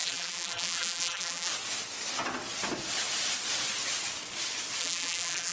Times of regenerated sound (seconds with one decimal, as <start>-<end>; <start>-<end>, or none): 0.0-1.5; 4.8-5.5

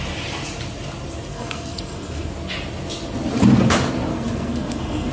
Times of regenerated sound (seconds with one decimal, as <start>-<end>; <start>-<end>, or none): 1.3-2.3; 4.1-5.1

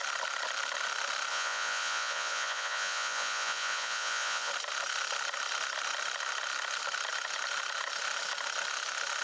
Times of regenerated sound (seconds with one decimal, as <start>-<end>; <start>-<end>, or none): 1.3-4.5

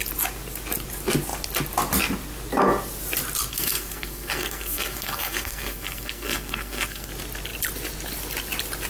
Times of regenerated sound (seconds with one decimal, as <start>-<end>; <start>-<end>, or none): 3.5-7.1

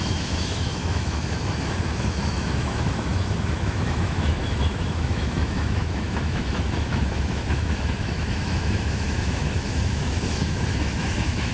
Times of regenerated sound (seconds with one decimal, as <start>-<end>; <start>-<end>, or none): 0.0-11.5